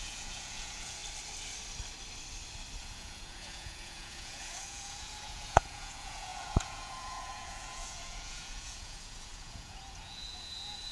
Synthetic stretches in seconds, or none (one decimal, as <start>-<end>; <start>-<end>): 0.0-1.0; 2.8-10.9